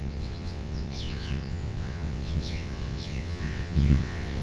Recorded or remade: remade